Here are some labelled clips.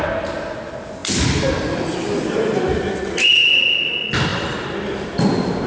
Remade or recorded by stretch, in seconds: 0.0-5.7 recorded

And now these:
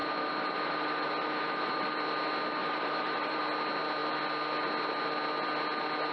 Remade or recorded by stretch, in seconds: 0.0-1.9 remade; 1.9-2.6 recorded; 2.6-3.4 remade; 3.4-6.1 recorded

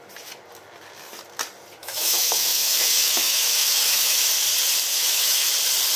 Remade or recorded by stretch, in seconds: 0.0-1.8 recorded; 1.8-4.3 remade; 4.3-4.9 recorded; 4.9-5.5 remade; 5.5-6.0 recorded

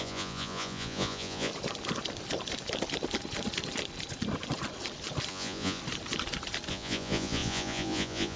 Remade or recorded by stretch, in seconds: 0.0-1.5 remade; 1.5-5.3 recorded; 5.3-5.8 remade; 5.8-6.7 recorded; 6.7-8.4 remade

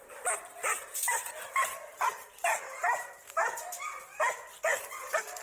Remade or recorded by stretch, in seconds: 0.0-0.6 recorded; 0.6-3.7 remade; 3.7-5.4 recorded

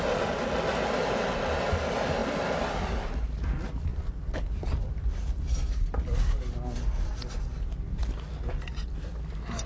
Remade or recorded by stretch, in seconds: 0.0-3.9 recorded; 3.9-5.0 remade; 5.0-9.7 recorded